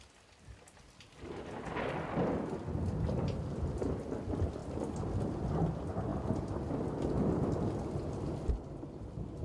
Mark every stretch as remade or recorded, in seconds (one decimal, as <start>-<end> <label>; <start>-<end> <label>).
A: 0.0-9.4 recorded